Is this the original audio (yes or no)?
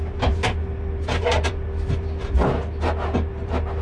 yes